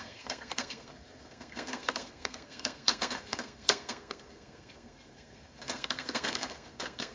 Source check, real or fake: fake